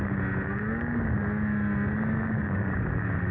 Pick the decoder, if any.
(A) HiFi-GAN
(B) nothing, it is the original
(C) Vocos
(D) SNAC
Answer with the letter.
B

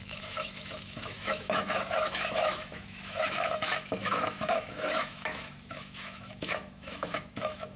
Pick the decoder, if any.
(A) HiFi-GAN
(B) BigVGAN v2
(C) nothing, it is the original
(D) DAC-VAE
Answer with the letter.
D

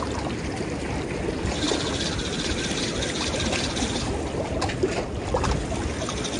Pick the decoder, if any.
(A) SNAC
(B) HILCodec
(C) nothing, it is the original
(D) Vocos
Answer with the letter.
C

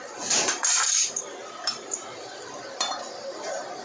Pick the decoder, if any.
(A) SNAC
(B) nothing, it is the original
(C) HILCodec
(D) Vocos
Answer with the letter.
B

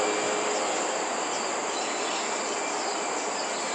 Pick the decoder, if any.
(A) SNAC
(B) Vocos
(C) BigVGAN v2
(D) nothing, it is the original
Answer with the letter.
D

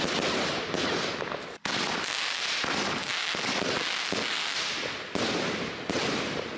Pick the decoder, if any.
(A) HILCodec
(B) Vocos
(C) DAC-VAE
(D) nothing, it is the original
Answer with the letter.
D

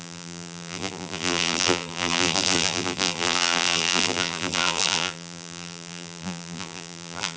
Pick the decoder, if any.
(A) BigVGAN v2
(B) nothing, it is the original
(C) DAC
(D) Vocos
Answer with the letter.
A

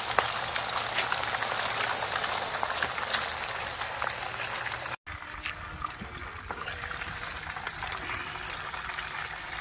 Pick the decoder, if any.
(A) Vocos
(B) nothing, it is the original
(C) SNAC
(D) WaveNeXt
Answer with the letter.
B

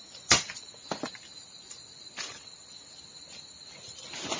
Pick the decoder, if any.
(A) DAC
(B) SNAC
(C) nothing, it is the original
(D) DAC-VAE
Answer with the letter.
C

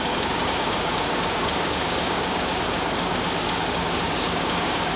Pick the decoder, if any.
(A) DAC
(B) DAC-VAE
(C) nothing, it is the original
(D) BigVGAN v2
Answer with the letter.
A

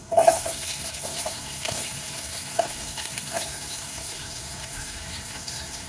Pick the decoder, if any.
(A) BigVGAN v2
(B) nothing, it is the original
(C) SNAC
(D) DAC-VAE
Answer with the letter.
C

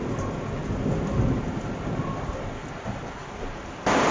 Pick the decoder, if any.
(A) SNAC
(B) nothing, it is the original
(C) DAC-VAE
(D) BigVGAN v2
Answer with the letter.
B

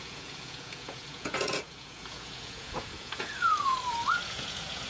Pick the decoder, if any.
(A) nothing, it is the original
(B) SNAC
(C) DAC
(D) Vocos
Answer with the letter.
D